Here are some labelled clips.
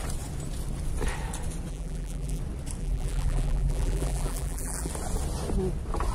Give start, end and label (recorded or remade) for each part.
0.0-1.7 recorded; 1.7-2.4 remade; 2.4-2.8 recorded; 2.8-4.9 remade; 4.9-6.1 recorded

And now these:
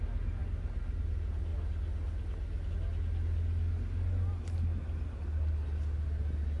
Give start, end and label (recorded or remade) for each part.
0.0-6.6 recorded

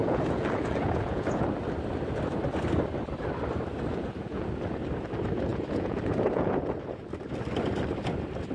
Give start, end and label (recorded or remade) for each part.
0.0-1.4 remade; 1.4-3.9 recorded; 3.9-4.5 remade; 4.5-5.5 recorded; 5.5-7.0 remade; 7.0-8.5 recorded

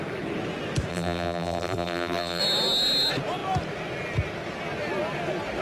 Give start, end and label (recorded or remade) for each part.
0.0-0.9 recorded; 0.9-2.4 remade; 2.4-5.6 recorded